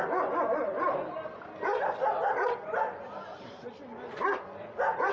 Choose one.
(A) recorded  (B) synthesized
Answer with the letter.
A